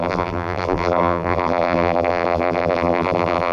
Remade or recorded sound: remade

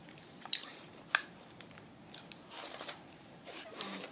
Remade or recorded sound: remade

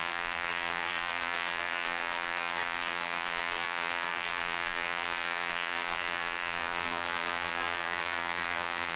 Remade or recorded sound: remade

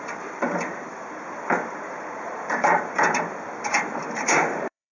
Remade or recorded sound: remade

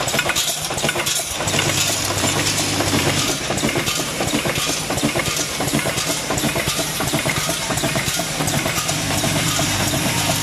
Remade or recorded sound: remade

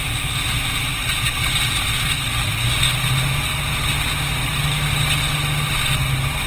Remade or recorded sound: recorded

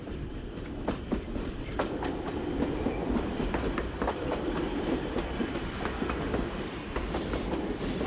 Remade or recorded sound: remade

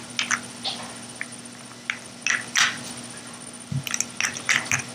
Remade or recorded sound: recorded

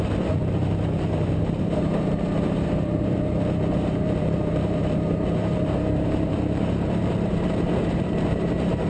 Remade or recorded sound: remade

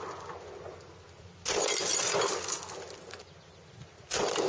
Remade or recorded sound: recorded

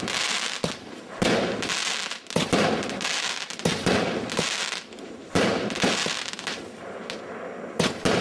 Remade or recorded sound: recorded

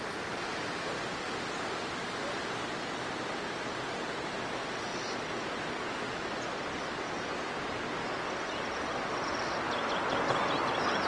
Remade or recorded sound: recorded